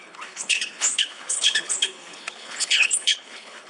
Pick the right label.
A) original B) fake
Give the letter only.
B